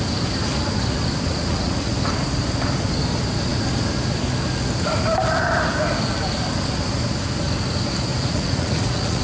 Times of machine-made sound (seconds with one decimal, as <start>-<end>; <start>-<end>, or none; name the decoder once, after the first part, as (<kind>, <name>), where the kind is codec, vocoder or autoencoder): 1.3-1.9 (vocoder, Vocos); 8.1-9.2